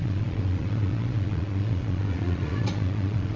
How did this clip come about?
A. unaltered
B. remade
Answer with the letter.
B